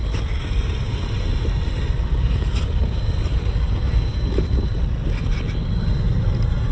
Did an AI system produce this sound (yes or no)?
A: no